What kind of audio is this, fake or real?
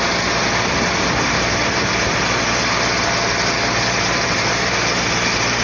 real